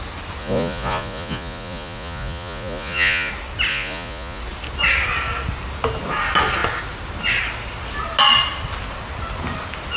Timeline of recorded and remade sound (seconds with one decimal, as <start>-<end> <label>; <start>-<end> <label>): 0.0-0.4 recorded; 0.4-3.3 remade; 3.3-3.7 recorded; 3.7-4.4 remade; 4.4-10.0 recorded